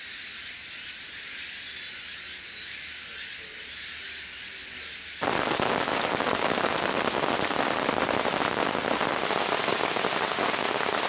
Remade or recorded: recorded